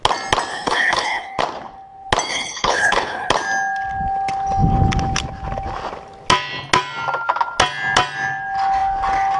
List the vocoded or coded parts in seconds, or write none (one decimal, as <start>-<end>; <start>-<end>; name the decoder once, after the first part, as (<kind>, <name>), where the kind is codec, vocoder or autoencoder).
0.5-1.4 (codec, HILCodec); 2.3-3.3